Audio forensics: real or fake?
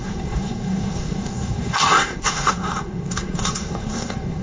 fake